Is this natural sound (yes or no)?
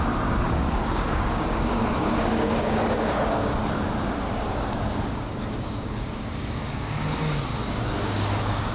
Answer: no